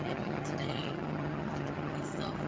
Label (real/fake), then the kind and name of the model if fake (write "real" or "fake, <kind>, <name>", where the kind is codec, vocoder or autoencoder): fake, vocoder, HiFi-GAN